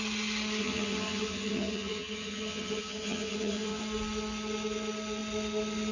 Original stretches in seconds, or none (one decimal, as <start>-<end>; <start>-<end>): 0.0-0.6; 3.8-5.9